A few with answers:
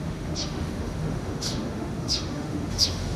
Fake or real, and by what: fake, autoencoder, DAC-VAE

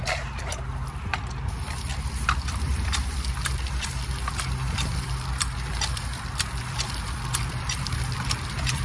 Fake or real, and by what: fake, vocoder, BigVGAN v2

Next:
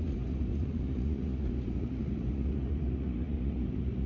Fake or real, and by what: fake, vocoder, Vocos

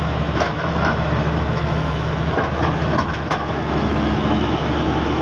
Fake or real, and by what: fake, autoencoder, DAC-VAE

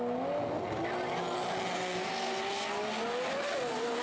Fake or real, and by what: real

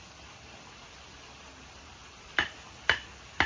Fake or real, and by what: real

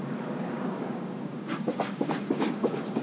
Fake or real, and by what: fake, codec, DAC